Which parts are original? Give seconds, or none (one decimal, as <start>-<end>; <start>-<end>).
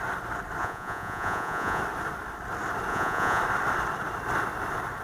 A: 0.0-0.6; 1.8-2.9; 3.4-5.0